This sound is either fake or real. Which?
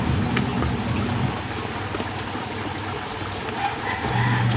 real